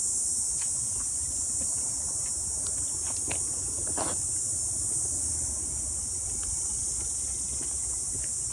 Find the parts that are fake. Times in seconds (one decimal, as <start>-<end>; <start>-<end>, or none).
none